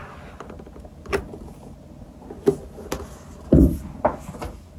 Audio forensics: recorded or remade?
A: recorded